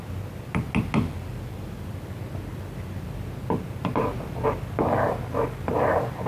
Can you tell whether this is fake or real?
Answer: real